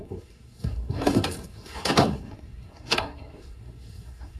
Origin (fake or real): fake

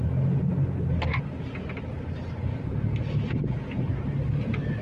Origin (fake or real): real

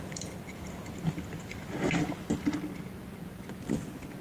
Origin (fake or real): real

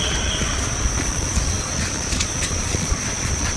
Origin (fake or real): fake